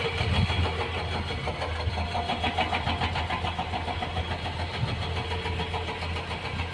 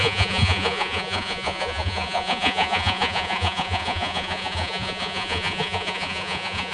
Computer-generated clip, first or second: second